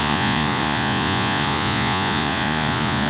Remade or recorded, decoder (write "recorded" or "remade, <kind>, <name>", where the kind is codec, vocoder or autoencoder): remade, vocoder, Vocos